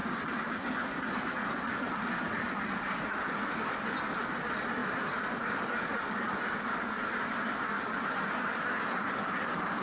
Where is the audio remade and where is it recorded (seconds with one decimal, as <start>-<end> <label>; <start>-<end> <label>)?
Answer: 0.0-3.0 remade; 3.0-4.8 recorded; 4.8-6.0 remade; 6.0-9.8 recorded